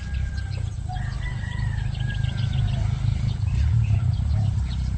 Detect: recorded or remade recorded